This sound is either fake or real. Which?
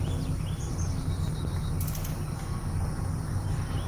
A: real